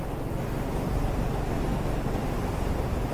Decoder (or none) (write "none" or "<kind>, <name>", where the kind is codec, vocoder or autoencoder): none